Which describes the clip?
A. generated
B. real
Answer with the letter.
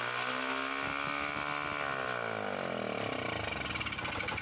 B